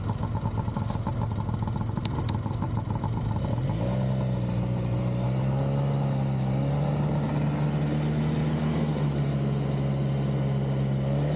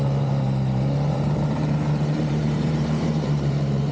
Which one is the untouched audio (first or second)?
first